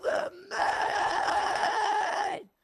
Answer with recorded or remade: remade